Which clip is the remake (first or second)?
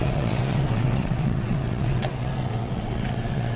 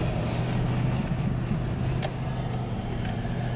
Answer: first